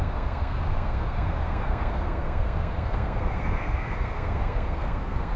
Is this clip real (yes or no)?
no